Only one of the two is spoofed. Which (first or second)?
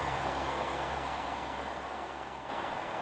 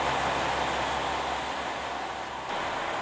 first